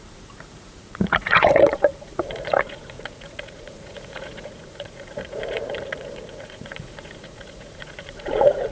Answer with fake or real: fake